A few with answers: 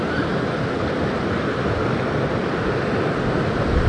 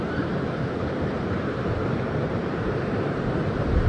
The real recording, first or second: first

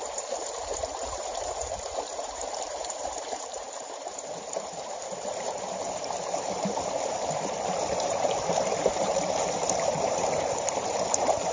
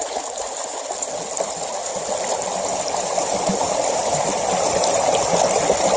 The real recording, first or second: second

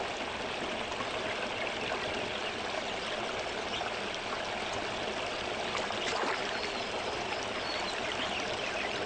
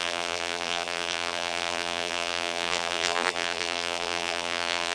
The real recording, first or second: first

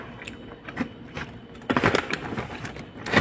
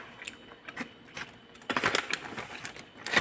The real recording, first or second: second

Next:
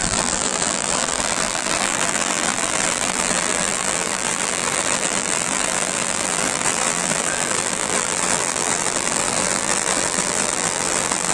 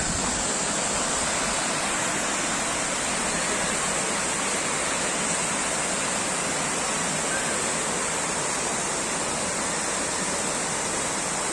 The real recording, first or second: second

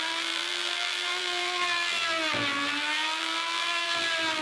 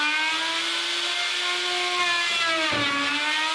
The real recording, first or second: second